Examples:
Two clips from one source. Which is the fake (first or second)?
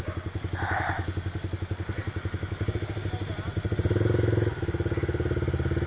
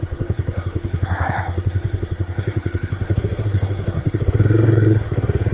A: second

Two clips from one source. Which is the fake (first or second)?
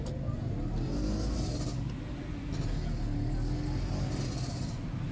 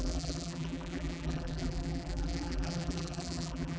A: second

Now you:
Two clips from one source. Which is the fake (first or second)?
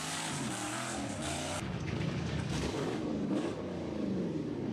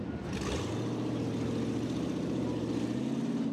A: first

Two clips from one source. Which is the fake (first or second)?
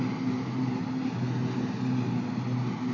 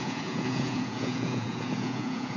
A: second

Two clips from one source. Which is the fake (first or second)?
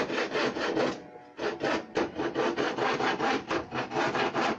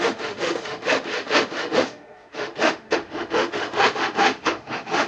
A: second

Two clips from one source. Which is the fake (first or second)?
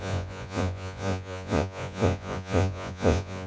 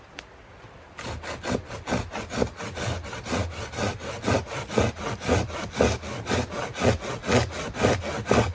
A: first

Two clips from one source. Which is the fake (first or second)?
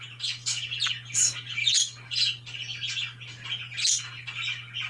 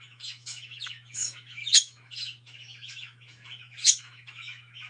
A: second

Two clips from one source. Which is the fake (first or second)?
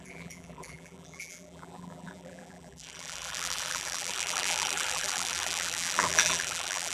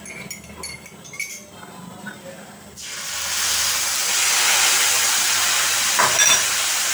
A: first